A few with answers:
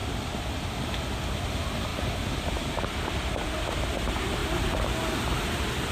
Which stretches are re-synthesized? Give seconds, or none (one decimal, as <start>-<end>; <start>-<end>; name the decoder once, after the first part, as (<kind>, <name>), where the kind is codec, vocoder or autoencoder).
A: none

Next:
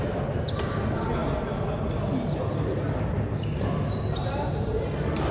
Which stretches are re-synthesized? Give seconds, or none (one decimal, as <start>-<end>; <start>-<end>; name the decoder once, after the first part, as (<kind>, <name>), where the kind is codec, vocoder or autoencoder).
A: 4.2-5.3 (vocoder, BigVGAN v2)

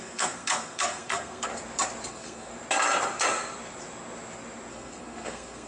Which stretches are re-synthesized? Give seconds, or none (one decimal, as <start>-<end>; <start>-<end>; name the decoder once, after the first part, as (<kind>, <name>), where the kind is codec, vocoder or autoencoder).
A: 0.0-1.5 (codec, SNAC); 2.1-2.5; 4.7-5.7

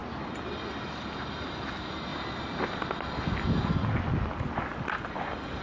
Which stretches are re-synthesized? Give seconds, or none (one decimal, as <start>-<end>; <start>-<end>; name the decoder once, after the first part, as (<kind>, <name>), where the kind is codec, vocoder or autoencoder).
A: 1.0-2.1 (vocoder, BigVGAN v2); 3.7-4.7